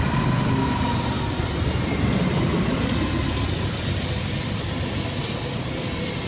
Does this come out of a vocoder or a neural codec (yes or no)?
no